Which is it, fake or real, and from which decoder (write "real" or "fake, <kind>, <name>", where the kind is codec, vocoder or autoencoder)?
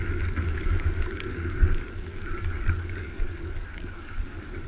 fake, codec, DAC